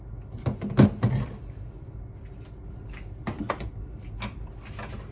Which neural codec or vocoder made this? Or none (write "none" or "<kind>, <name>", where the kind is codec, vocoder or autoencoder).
none